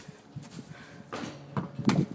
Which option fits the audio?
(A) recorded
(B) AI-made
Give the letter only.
A